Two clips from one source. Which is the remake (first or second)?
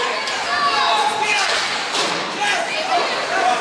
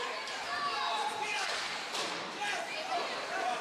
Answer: second